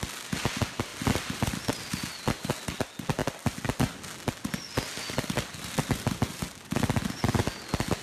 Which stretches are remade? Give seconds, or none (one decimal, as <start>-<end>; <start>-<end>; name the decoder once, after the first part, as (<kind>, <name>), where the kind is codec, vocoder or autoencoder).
none